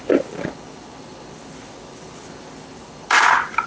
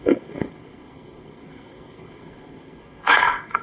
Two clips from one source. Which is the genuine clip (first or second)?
first